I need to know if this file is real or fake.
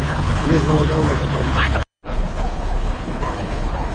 fake